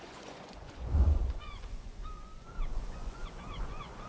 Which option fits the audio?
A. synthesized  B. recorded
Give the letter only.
A